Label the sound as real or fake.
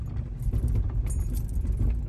real